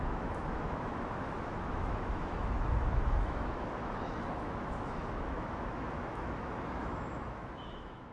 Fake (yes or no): yes